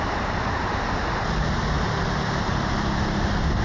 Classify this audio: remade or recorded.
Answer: recorded